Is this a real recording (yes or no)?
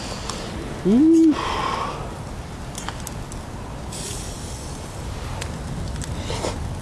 yes